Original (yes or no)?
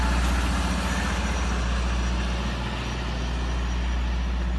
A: yes